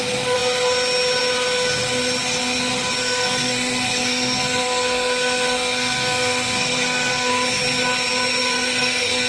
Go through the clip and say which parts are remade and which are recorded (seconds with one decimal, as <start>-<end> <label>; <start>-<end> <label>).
0.0-3.0 recorded; 3.0-7.3 remade; 7.3-8.4 recorded; 8.4-9.3 remade